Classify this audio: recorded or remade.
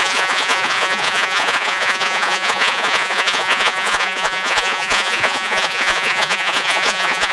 remade